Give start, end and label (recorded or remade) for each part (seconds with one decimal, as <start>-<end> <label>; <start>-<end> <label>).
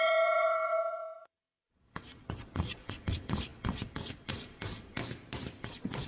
0.0-5.0 remade; 5.0-5.6 recorded; 5.6-6.1 remade